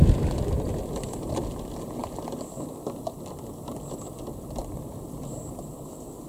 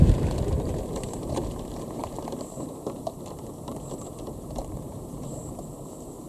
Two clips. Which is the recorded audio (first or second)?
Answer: first